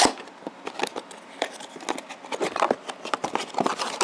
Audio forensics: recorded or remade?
recorded